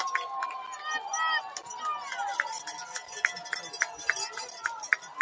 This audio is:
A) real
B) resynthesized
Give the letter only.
A